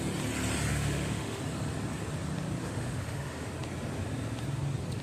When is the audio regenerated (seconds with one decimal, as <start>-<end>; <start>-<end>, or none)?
0.7-1.4; 2.6-3.5